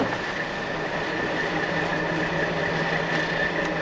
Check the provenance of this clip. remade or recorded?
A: recorded